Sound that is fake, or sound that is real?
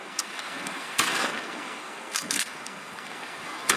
fake